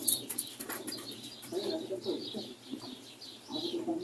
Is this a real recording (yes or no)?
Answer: no